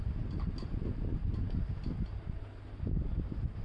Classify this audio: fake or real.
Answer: real